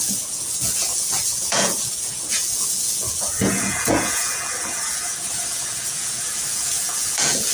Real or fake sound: fake